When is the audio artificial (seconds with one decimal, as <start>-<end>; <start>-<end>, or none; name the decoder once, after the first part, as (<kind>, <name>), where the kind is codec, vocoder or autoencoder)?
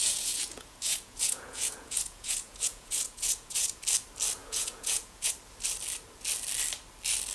0.0-3.8 (vocoder, Vocos); 4.4-5.3